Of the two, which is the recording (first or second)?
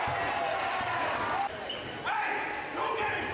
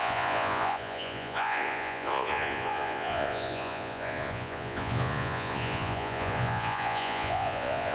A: first